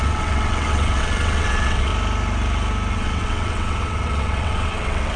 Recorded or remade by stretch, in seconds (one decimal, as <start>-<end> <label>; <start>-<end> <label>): 0.0-1.9 remade; 1.9-2.9 recorded; 2.9-5.2 remade